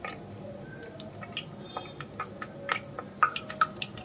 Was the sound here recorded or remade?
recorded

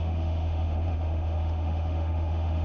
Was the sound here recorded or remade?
remade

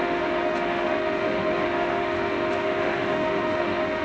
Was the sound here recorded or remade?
remade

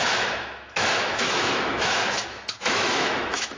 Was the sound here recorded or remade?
remade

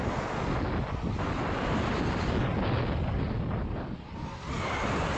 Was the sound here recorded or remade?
recorded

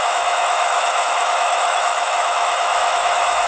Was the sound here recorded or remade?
remade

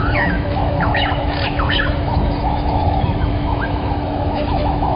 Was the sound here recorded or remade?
remade